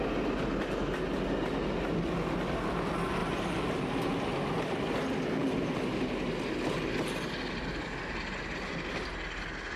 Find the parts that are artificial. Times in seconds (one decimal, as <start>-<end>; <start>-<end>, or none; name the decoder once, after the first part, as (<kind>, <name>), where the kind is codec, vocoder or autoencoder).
3.2-4.0 (vocoder, BigVGAN v2)

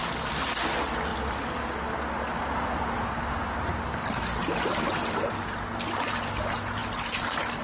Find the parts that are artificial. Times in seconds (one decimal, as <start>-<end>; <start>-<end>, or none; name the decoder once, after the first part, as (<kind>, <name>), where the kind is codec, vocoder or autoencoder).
0.0-0.6 (vocoder, BigVGAN v2); 1.1-2.8; 4.4-5.2

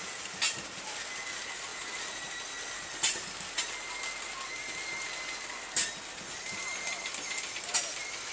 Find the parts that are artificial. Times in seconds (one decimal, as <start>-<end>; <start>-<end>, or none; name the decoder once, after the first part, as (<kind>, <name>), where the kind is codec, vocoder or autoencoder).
none

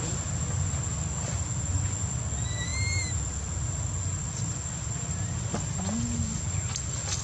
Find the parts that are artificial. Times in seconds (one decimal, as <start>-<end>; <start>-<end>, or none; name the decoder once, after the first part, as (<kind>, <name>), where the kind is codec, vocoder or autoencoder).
none